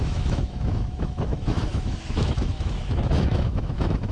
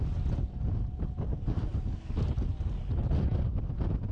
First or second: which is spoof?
first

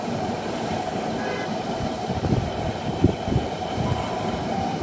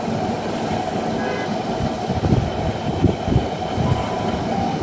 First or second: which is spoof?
first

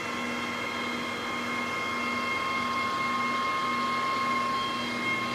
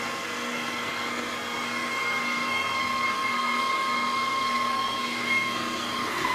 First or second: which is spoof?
second